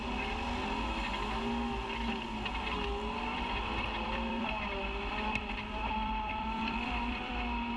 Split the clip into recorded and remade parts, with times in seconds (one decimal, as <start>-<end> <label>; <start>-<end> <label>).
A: 0.0-3.3 recorded; 3.3-4.5 remade; 4.5-5.1 recorded; 5.1-7.3 remade; 7.3-7.8 recorded